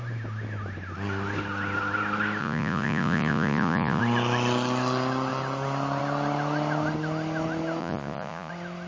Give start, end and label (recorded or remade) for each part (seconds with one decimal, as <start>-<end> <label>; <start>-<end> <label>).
0.0-2.4 recorded; 2.4-4.0 remade; 4.0-7.8 recorded; 7.8-8.5 remade; 8.5-8.9 recorded